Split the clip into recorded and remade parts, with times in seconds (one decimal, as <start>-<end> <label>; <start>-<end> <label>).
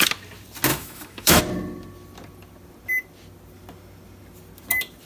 0.0-0.7 recorded; 0.7-1.4 remade; 1.4-5.1 recorded